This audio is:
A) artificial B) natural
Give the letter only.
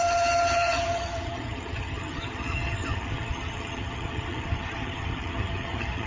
A